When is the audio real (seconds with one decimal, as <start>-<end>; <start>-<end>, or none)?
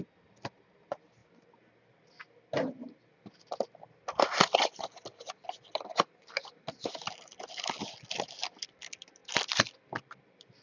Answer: 0.0-10.6